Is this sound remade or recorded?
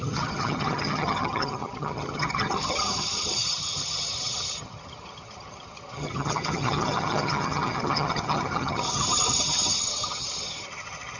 remade